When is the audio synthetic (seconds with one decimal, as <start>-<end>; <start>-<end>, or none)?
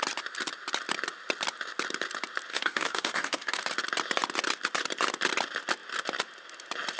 2.5-3.6